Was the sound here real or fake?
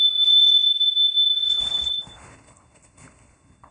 fake